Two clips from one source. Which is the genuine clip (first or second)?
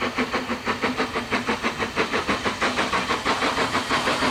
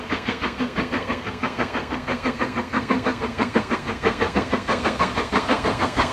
first